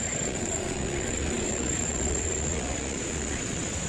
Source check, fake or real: fake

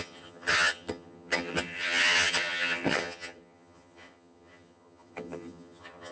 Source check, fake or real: fake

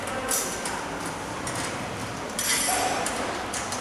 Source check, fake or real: fake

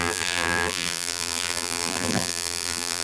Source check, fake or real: fake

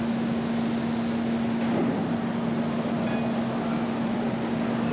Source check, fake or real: real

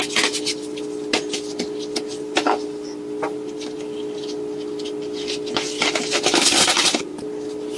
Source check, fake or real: real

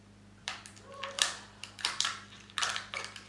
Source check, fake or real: fake